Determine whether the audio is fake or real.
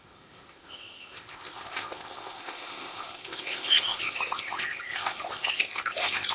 fake